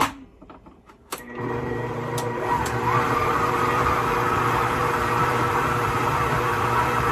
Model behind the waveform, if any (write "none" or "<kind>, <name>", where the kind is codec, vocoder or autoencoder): vocoder, BigVGAN v2